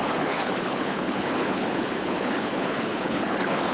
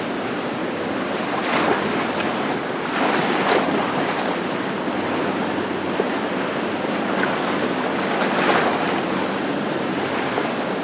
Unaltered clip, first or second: second